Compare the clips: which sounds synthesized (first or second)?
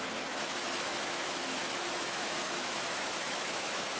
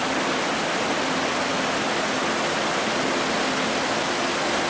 first